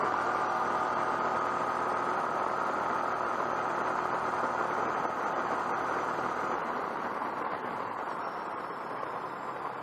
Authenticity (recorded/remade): remade